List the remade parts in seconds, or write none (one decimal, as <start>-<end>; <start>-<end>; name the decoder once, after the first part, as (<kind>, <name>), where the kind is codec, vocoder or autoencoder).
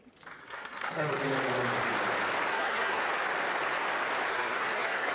0.4-1.2 (codec, SNAC); 2.5-3.0; 4.3-5.1